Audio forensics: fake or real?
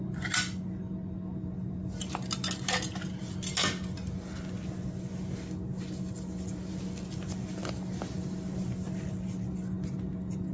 real